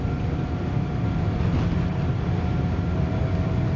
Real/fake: real